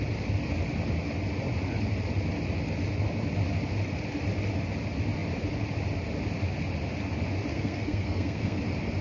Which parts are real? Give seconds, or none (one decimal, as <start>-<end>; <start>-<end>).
0.0-7.5; 8.6-9.0